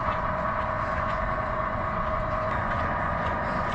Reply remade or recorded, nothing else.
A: remade